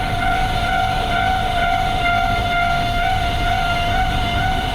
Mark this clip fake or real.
fake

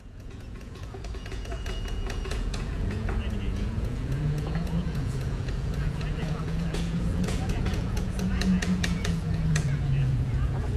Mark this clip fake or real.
fake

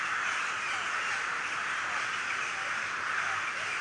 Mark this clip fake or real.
real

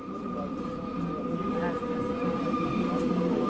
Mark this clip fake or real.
real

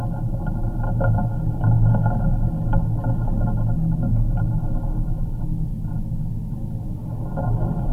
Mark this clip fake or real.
real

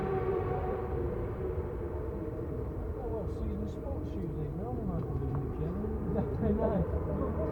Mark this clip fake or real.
fake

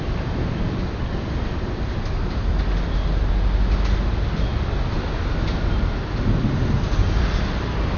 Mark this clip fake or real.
real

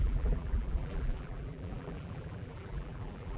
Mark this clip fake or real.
fake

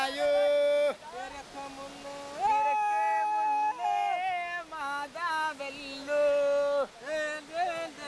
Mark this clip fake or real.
real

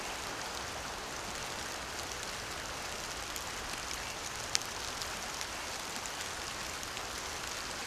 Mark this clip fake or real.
real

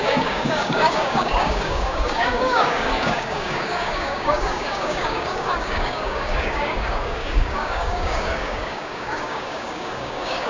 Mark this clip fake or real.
fake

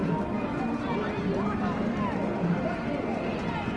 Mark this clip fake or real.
real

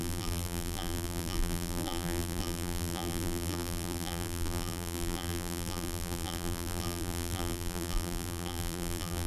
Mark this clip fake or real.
fake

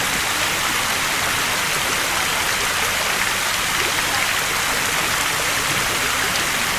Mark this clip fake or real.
real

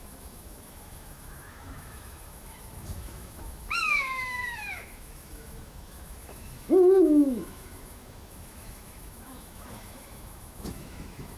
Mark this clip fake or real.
fake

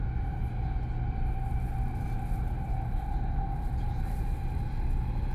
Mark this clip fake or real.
real